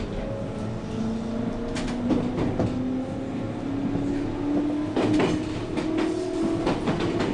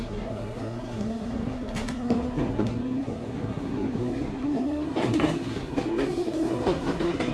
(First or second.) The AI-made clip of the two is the second